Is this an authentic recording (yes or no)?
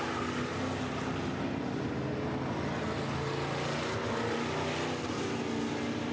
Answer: yes